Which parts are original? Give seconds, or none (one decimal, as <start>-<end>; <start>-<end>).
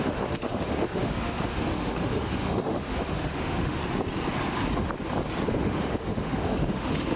3.8-5.6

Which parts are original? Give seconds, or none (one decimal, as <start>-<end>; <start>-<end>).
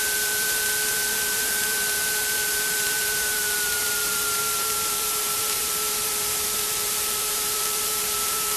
none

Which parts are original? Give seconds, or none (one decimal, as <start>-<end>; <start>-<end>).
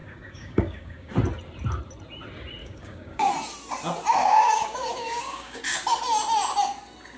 1.1-2.6; 3.3-4.2; 5.6-7.2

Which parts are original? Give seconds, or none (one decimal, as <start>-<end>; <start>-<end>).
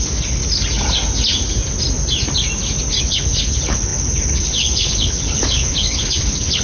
0.4-3.0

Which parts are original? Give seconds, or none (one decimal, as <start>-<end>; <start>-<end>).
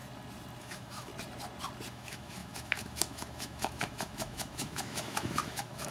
0.0-0.6; 1.1-1.9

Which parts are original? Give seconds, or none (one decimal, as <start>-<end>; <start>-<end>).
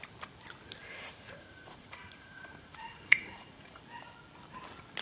0.0-0.8; 3.8-5.0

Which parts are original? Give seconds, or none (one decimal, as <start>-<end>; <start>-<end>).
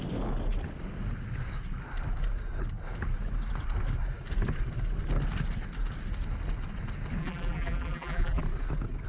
0.0-7.2; 8.4-9.1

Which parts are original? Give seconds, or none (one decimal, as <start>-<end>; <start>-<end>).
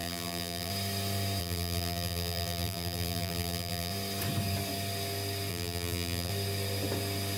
0.7-1.4; 3.9-5.5; 6.3-7.4